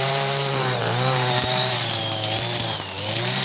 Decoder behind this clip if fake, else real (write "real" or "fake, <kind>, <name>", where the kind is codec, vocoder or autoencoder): fake, vocoder, BigVGAN v2